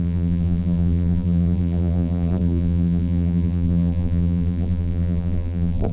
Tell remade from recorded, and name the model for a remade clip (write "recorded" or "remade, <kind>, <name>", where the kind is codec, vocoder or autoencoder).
remade, vocoder, BigVGAN v2